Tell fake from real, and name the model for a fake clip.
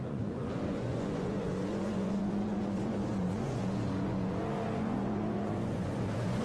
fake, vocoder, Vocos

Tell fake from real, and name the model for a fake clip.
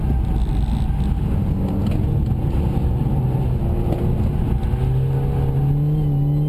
real